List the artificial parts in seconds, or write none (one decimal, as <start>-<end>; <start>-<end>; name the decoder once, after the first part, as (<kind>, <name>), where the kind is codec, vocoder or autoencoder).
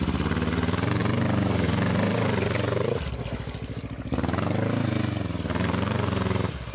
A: none